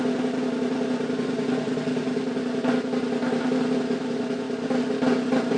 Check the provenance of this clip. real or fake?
real